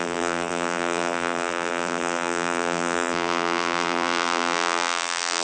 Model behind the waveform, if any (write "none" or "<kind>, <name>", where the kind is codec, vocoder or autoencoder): vocoder, BigVGAN v2